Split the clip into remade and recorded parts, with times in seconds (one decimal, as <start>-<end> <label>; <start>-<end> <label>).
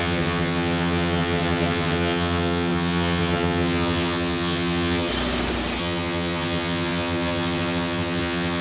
0.0-5.1 remade; 5.1-5.8 recorded; 5.8-8.6 remade